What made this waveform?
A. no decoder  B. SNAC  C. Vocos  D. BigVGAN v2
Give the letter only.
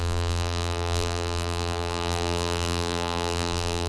D